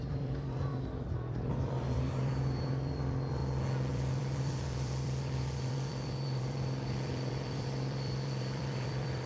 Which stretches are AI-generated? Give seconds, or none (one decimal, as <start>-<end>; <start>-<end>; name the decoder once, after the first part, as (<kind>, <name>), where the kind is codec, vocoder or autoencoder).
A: 0.0-3.4 (vocoder, BigVGAN v2); 3.9-9.3